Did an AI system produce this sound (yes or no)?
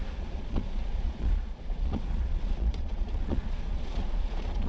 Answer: yes